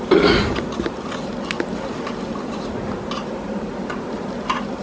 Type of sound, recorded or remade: recorded